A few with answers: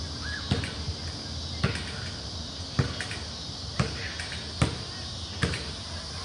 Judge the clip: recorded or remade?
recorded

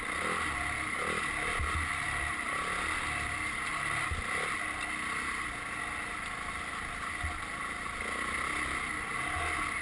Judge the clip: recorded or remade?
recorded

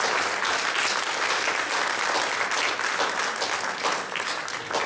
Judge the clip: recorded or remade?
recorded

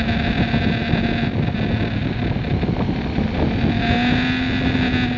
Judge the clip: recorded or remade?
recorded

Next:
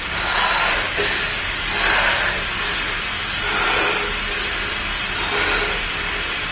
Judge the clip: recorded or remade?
recorded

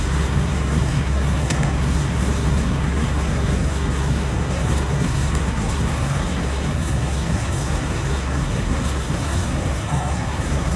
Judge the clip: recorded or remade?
remade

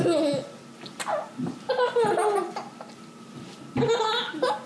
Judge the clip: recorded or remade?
recorded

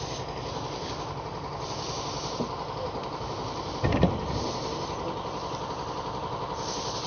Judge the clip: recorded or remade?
recorded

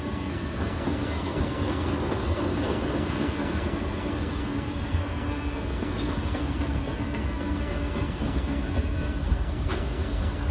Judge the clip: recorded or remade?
remade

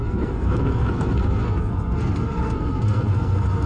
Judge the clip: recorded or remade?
remade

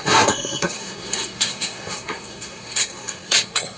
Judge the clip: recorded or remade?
remade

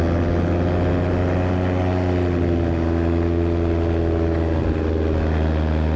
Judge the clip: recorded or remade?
recorded